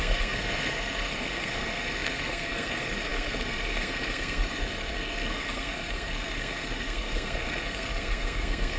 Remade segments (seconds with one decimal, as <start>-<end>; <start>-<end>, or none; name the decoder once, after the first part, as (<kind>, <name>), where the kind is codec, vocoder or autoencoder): 0.0-8.8 (codec, SNAC)